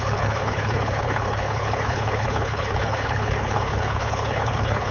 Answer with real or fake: fake